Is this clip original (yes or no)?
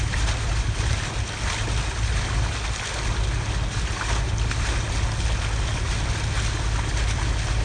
yes